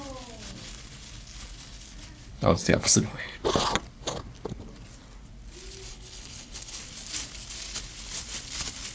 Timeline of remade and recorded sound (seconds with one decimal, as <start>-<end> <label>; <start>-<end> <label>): 0.0-2.3 recorded; 2.3-3.1 remade; 3.1-5.9 recorded; 5.9-6.8 remade; 6.8-8.9 recorded